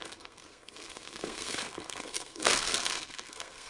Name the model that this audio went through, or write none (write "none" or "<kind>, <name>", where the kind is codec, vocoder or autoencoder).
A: codec, SNAC